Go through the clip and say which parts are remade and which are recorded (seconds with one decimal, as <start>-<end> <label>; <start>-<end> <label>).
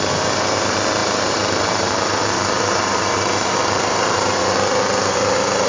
0.0-1.0 recorded; 1.0-4.4 remade; 4.4-5.7 recorded